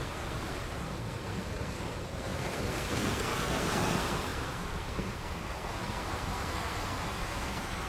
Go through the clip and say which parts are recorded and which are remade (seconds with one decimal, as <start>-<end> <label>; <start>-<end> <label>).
0.0-7.9 remade